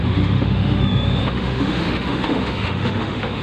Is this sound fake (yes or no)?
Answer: yes